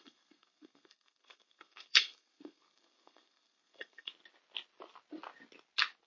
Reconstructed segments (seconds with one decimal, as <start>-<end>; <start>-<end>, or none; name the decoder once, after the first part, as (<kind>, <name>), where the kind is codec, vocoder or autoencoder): 0.0-4.1 (codec, SNAC)

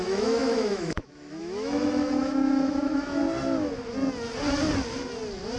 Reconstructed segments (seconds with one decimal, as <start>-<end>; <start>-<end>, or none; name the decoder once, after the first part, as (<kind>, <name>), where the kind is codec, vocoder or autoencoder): 0.0-3.2 (autoencoder, DAC-VAE)

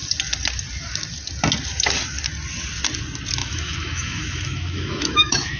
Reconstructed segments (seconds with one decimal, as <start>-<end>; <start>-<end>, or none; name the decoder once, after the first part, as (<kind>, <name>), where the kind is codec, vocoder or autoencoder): 3.4-5.6 (autoencoder, DAC-VAE)

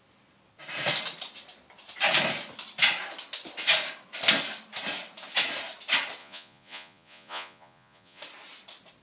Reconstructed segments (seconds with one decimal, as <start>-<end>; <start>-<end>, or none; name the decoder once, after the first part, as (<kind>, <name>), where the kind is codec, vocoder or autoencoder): 6.2-8.2 (vocoder, Vocos)

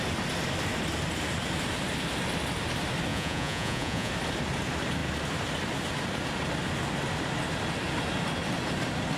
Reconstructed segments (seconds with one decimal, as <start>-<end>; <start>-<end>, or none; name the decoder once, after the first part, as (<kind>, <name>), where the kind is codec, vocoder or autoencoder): 3.1-4.1 (vocoder, Vocos)

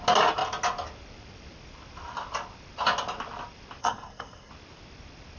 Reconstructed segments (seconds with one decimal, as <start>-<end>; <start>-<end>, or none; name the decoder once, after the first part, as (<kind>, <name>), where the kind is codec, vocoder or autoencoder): 3.8-4.5 (codec, SNAC)